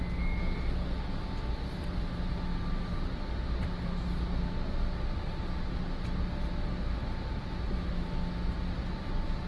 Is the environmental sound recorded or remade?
recorded